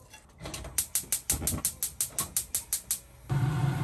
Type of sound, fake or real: real